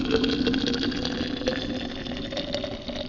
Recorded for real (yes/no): yes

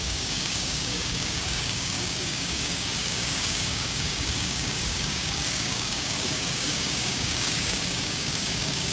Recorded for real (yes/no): no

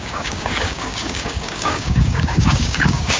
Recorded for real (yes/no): no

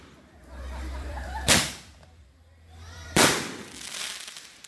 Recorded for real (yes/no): no